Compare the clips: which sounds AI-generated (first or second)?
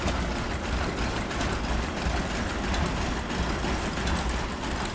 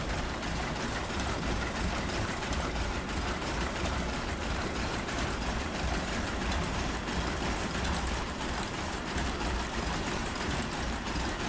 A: second